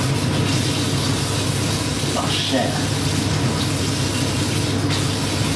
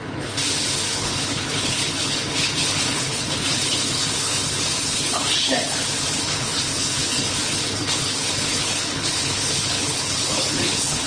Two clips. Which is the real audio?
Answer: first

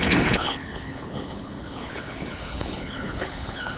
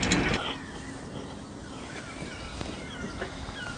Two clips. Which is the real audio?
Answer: second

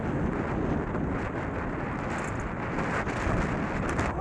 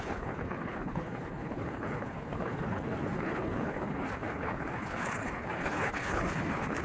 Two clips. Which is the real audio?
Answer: first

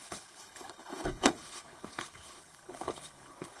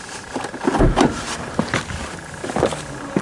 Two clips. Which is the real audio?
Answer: second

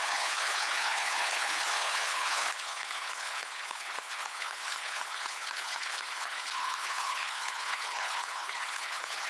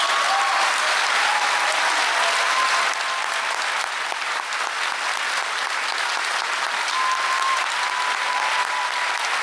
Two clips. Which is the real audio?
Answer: second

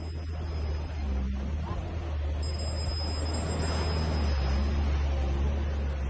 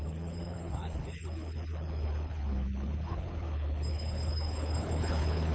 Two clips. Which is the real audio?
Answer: first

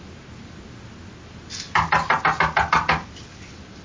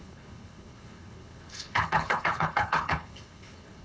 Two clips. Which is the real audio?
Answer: first